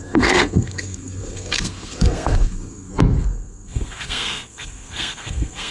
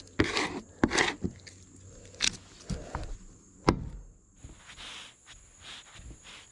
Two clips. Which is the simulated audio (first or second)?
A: first